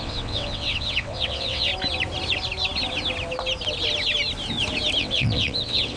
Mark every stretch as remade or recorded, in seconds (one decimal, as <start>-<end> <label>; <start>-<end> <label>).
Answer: 0.0-1.7 remade; 1.7-5.0 recorded; 5.0-6.0 remade